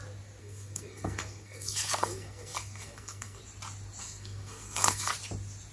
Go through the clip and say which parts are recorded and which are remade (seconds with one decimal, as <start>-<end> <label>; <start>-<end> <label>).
0.0-0.4 recorded; 0.4-3.4 remade; 3.4-4.0 recorded; 4.0-5.1 remade; 5.1-5.7 recorded